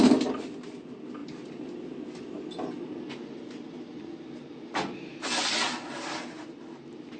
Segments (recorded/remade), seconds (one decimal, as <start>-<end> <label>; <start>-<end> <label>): 0.0-7.2 recorded